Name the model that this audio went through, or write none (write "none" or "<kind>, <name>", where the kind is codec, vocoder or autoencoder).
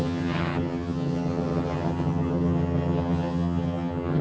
vocoder, HiFi-GAN